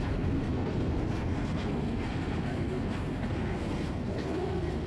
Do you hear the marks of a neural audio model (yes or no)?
yes